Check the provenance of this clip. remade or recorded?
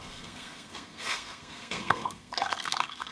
remade